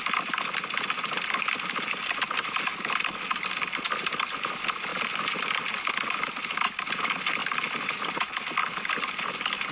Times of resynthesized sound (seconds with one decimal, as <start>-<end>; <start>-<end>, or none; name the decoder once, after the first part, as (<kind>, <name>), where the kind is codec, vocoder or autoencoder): none

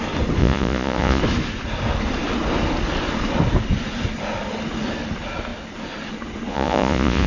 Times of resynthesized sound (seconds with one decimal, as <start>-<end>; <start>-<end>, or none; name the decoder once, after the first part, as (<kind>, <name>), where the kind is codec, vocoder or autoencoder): 0.4-1.2 (vocoder, Vocos); 6.5-7.3

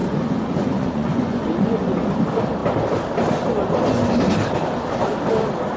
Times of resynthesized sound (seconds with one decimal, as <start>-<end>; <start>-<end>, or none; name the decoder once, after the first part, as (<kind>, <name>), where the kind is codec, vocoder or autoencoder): 0.0-2.1 (vocoder, Vocos)

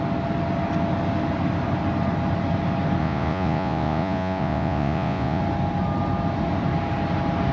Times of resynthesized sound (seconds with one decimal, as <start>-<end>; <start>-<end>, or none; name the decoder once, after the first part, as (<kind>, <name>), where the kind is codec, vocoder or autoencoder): 3.0-5.4 (vocoder, Vocos)

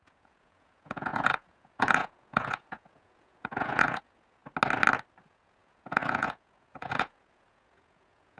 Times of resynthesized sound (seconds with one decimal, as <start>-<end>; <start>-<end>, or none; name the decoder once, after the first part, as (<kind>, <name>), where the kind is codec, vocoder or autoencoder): 0.0-4.4 (vocoder, Vocos); 5.2-8.4